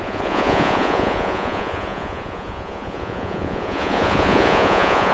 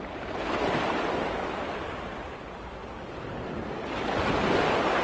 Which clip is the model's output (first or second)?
first